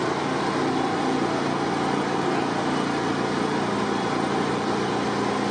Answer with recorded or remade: recorded